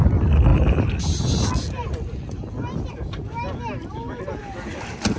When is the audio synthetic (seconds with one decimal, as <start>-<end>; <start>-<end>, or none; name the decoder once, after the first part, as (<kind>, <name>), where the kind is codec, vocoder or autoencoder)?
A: 3.8-4.4 (vocoder, BigVGAN v2)